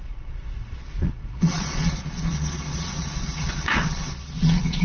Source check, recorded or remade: remade